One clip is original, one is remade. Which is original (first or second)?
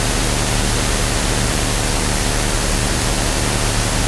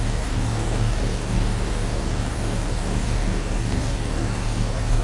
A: first